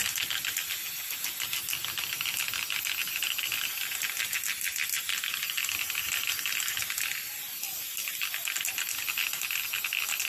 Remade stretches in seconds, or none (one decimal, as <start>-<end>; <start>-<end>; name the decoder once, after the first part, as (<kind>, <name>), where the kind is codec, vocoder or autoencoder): 3.0-3.7 (vocoder, BigVGAN v2)